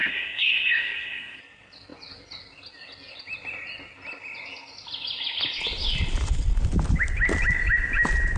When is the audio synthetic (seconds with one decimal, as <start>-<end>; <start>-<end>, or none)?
0.0-1.4